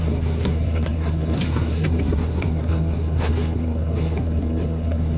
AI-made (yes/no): yes